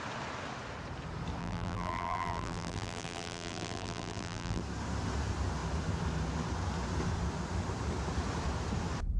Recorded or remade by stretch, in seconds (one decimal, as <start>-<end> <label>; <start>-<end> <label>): 0.0-1.4 recorded; 1.4-4.6 remade; 4.6-9.2 recorded